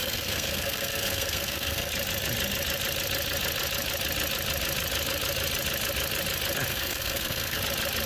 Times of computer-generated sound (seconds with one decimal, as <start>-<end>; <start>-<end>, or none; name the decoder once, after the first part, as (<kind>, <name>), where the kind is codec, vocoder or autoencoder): 0.0-1.9 (codec, SNAC); 6.7-7.6